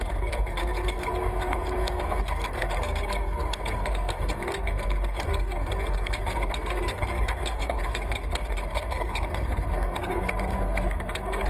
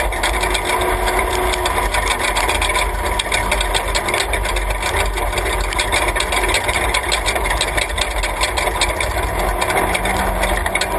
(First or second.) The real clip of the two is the second